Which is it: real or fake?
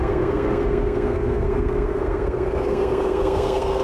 fake